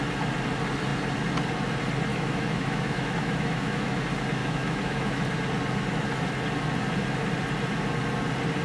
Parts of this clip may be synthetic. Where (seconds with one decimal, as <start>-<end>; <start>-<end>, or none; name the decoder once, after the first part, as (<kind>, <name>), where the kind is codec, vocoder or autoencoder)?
2.1-4.0 (autoencoder, DAC-VAE); 4.4-5.2